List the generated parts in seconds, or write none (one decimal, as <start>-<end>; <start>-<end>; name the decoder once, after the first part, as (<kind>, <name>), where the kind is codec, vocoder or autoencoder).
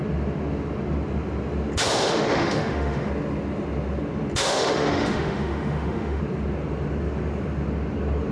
2.0-3.1 (autoencoder, DAC-VAE); 4.4-6.2